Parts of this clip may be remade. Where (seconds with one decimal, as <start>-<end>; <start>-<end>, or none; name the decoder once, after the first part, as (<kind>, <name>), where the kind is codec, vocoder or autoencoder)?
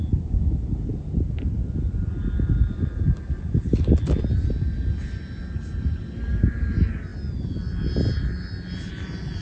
none